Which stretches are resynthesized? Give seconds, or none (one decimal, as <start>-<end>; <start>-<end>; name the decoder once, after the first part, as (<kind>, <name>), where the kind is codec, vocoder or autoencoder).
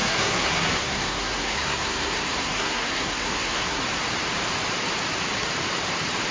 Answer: 0.0-3.8 (codec, SNAC)